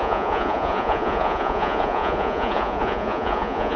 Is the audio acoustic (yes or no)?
no